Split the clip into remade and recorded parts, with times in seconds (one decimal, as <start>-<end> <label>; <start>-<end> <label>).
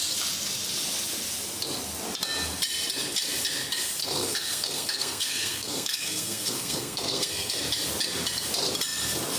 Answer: 0.0-4.0 recorded; 4.0-7.6 remade; 7.6-9.4 recorded